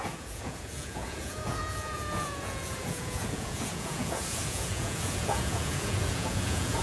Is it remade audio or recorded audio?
remade